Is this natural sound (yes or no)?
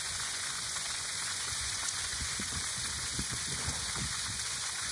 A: no